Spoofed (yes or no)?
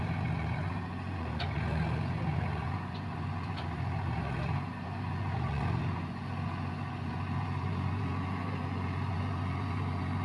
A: yes